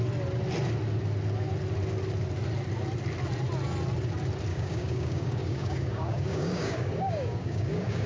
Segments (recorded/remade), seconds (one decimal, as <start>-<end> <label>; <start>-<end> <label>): 0.0-4.5 recorded; 4.5-8.1 remade